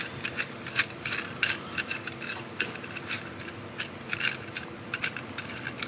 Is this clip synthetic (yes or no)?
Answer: no